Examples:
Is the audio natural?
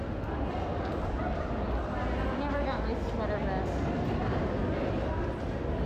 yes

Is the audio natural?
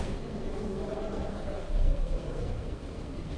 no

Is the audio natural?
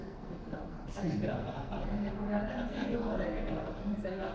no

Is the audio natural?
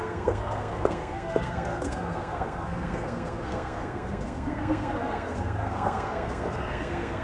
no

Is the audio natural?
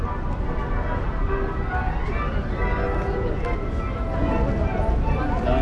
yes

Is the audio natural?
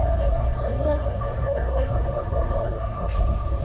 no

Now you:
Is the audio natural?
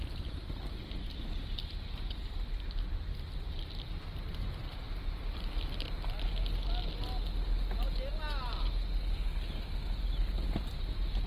yes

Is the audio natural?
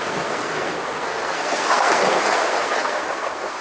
no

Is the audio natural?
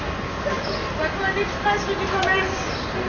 yes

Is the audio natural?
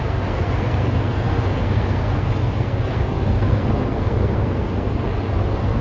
no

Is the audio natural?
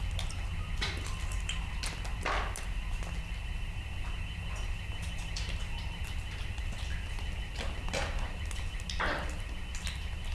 yes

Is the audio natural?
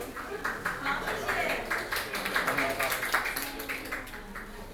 yes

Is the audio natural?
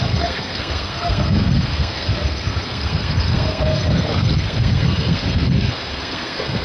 no